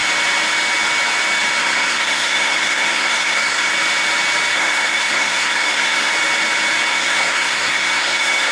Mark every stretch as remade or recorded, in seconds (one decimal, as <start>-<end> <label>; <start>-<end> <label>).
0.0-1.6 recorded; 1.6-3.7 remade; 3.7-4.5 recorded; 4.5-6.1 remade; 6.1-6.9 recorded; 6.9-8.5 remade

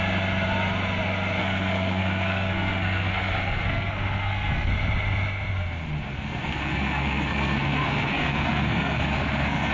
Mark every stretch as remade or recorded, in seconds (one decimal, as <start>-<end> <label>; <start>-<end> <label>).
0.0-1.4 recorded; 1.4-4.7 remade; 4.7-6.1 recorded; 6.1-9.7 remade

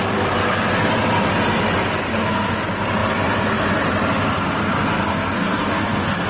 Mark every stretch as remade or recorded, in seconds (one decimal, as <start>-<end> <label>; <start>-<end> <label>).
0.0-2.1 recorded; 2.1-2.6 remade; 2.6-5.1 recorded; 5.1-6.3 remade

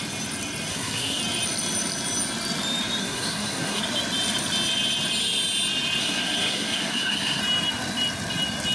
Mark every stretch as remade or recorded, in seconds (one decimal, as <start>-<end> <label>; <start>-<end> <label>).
0.0-0.7 recorded; 0.7-1.2 remade; 1.2-3.0 recorded; 3.0-3.8 remade; 3.8-6.0 recorded; 6.0-7.4 remade; 7.4-8.7 recorded

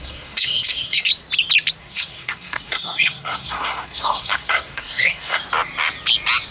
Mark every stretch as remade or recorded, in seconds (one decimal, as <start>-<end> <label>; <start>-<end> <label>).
0.0-1.1 remade; 1.1-1.8 recorded; 1.8-5.4 remade; 5.4-6.5 recorded

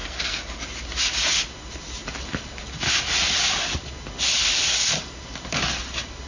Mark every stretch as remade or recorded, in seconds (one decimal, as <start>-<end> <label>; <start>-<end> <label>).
0.0-0.6 remade; 0.6-6.3 recorded

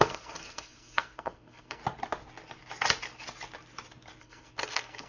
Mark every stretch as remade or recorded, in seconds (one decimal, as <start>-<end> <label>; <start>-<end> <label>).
0.0-1.8 remade; 1.8-4.2 recorded; 4.2-5.1 remade

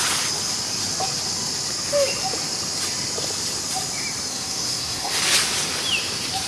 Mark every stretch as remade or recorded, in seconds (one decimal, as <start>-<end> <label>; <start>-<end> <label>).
0.0-4.3 recorded; 4.3-5.2 remade; 5.2-6.5 recorded